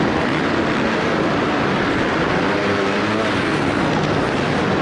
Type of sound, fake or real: real